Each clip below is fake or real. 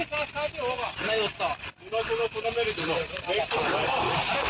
real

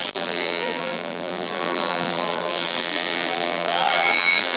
fake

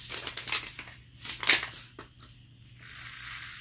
real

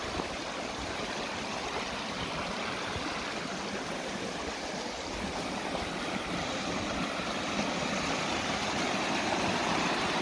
real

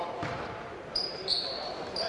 fake